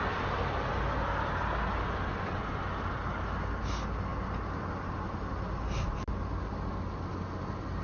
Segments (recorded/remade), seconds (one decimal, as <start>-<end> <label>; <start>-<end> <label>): 0.0-7.8 recorded